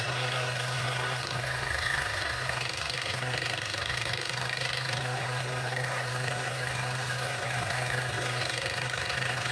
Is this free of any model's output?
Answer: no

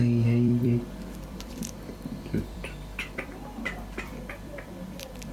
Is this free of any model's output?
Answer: no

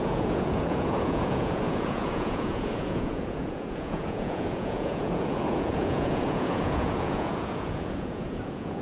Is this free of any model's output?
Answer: no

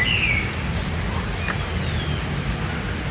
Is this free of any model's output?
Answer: yes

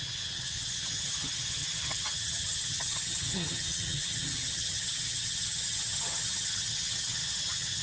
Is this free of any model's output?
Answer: no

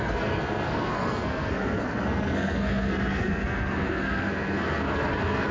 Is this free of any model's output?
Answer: no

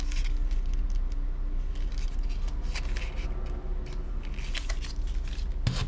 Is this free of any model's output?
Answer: yes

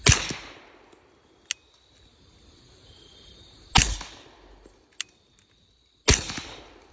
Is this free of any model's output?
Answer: yes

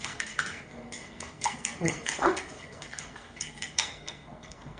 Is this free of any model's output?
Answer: no